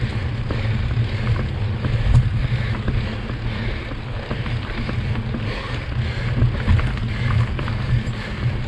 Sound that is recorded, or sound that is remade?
recorded